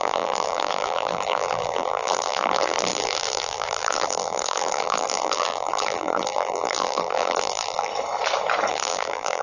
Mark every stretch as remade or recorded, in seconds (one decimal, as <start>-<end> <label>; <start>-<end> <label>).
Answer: 0.0-7.9 remade; 7.9-8.7 recorded; 8.7-9.4 remade